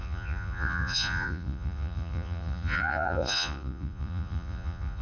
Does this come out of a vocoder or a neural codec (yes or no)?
yes